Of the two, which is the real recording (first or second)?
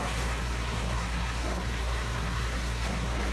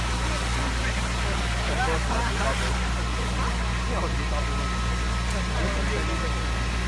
second